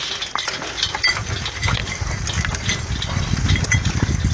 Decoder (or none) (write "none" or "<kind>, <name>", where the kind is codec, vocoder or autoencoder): none